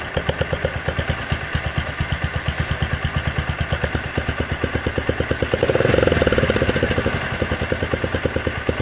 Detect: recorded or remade recorded